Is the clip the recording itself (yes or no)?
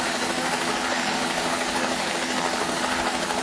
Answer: no